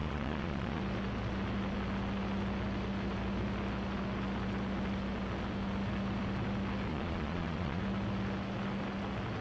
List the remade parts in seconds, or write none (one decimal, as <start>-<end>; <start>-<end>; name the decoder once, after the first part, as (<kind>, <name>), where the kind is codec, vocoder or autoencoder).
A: 0.0-0.8 (vocoder, Vocos); 6.9-7.8